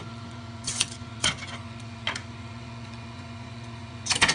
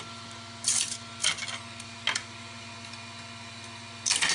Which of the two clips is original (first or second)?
second